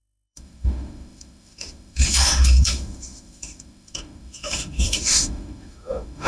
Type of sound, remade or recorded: remade